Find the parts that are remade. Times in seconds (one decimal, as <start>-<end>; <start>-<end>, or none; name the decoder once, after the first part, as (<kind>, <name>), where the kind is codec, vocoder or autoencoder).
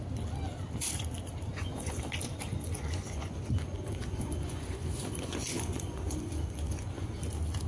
1.5-2.0 (vocoder, Vocos); 2.6-7.2